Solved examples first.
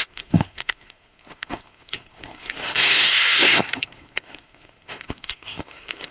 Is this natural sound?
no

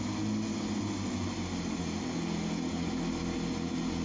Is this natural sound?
yes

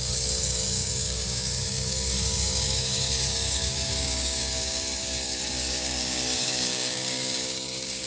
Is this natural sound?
no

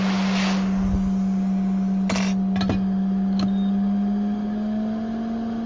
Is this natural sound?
yes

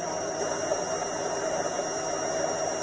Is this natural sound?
yes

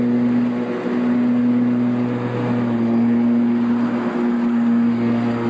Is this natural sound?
yes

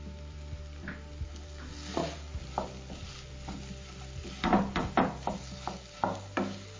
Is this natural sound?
yes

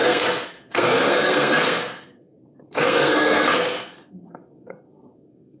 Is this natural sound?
no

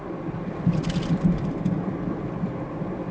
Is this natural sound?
yes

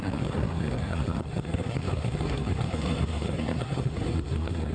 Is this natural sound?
no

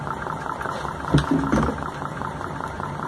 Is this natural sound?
yes